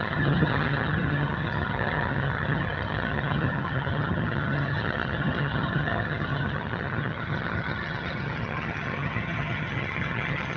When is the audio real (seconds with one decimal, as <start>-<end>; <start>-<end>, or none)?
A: none